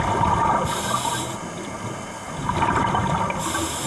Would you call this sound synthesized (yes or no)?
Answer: no